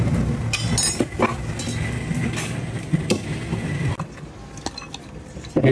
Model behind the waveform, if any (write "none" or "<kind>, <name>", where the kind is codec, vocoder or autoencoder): none